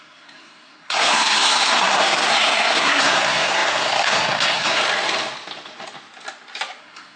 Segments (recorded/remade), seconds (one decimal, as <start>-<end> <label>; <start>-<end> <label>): 0.0-4.8 remade; 4.8-6.8 recorded; 6.8-7.2 remade